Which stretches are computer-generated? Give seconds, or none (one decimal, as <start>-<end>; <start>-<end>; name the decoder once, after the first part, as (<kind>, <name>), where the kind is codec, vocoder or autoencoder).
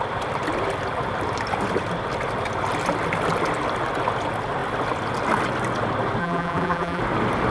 6.2-7.0 (vocoder, BigVGAN v2)